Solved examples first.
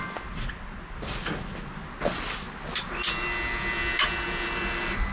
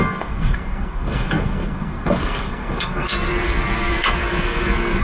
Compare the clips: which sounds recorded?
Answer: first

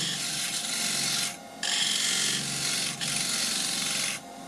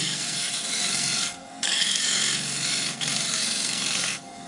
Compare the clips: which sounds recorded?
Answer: first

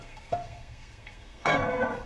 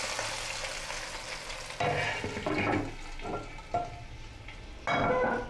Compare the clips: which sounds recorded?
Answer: second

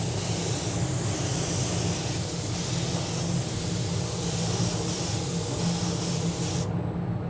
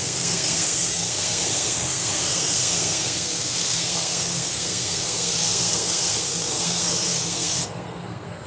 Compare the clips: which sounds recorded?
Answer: first